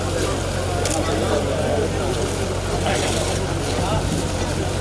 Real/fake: real